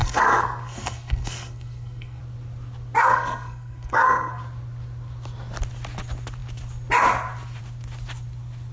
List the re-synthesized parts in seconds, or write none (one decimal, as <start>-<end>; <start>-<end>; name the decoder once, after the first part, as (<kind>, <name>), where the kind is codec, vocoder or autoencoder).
0.0-2.2 (codec, SNAC); 3.0-4.4